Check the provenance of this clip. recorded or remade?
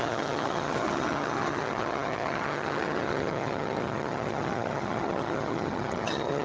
remade